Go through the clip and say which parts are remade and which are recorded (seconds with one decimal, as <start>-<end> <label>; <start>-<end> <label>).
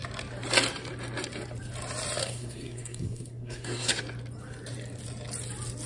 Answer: 0.0-2.2 recorded; 2.2-4.0 remade; 4.0-5.9 recorded